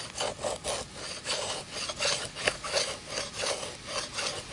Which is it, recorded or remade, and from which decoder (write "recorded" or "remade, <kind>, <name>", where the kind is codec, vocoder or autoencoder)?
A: recorded